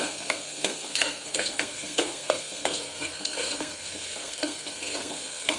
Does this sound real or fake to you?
fake